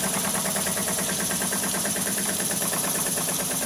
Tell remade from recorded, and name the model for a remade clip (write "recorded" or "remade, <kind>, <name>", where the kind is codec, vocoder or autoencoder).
remade, vocoder, BigVGAN v2